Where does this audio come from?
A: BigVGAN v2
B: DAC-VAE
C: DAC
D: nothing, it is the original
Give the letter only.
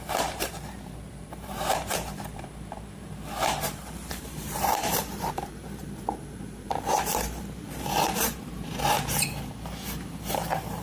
A